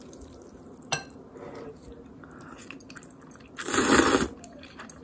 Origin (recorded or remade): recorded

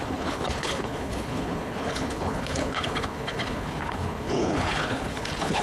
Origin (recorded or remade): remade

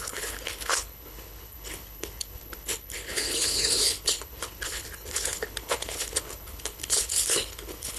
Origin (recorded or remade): remade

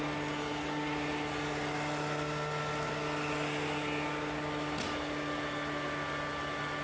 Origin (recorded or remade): recorded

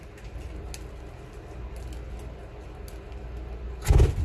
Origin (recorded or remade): recorded